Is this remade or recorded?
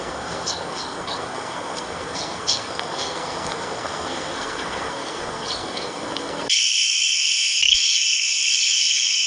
remade